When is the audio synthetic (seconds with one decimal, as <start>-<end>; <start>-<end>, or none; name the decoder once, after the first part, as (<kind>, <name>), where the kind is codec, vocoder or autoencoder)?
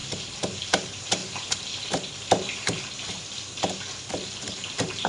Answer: 0.6-1.2 (vocoder, BigVGAN v2); 4.1-5.1